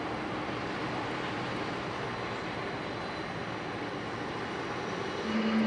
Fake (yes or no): no